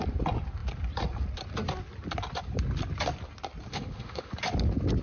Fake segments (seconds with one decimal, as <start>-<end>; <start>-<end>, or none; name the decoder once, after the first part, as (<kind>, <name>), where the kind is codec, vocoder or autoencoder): 3.7-4.3 (autoencoder, DAC-VAE)